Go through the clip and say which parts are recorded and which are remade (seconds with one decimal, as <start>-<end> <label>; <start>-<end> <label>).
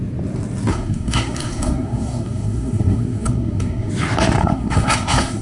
0.0-0.7 recorded; 0.7-3.9 remade; 3.9-4.4 recorded; 4.4-5.4 remade